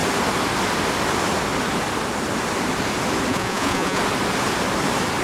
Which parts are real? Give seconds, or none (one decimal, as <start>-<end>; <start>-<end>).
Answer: 0.0-3.3; 4.0-5.2